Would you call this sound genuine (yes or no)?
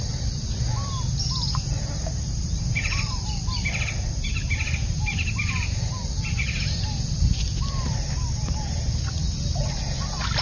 yes